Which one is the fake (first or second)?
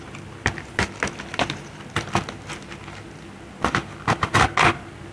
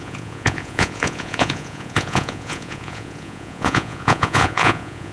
second